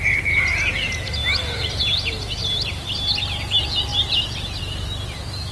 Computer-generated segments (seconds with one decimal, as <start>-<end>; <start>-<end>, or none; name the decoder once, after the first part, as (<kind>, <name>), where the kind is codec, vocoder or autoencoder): 2.4-3.2 (vocoder, BigVGAN v2)